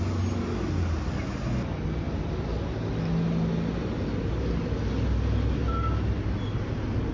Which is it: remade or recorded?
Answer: recorded